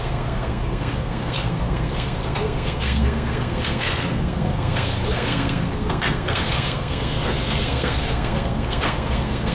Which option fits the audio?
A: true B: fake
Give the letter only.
B